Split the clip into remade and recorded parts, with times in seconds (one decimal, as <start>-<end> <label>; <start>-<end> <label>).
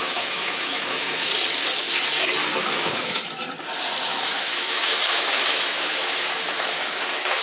0.0-1.3 remade; 1.3-2.6 recorded; 2.6-3.4 remade; 3.4-4.0 recorded; 4.0-7.4 remade